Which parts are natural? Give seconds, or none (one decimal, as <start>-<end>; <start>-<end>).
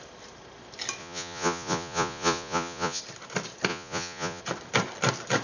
0.0-1.0; 3.0-3.7; 4.4-5.4